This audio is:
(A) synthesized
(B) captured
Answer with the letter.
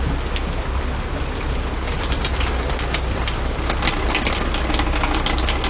B